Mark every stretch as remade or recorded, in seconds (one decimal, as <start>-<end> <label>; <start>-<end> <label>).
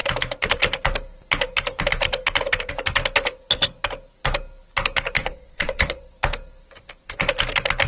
0.0-5.2 recorded; 5.2-6.0 remade; 6.0-7.9 recorded